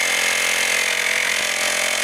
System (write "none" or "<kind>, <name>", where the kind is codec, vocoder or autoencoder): vocoder, BigVGAN v2